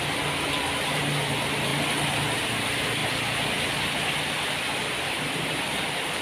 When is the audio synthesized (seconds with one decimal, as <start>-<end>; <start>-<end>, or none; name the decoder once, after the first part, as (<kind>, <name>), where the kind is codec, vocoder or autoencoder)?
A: none